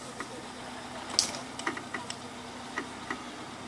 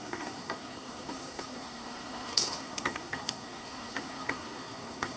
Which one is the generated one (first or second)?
second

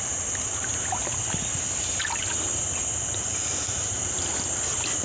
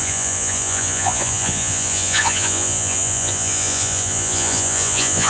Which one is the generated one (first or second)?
second